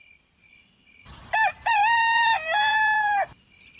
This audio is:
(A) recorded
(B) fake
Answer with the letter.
B